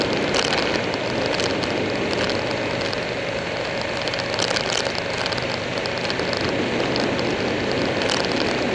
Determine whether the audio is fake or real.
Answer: real